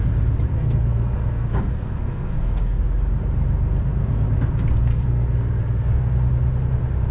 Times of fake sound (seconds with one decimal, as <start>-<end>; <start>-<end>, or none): 0.5-2.8; 4.9-6.0